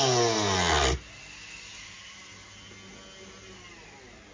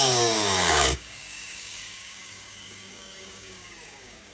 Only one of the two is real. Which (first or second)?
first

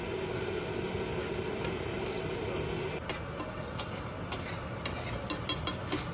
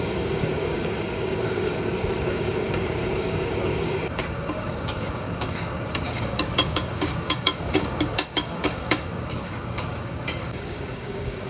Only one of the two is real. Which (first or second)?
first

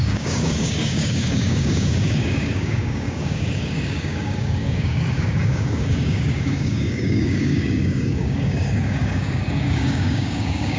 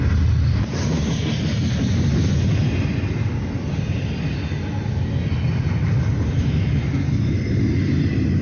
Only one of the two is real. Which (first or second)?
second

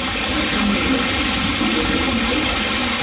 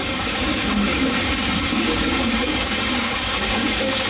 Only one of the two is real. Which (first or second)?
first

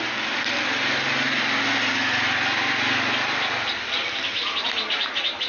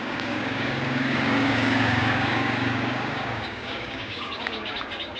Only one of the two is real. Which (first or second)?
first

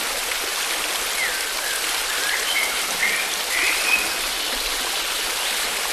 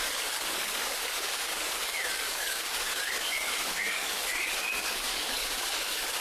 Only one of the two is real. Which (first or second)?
first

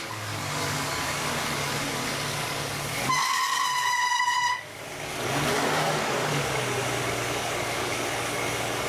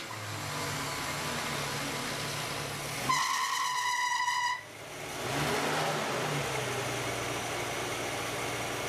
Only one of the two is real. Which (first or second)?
second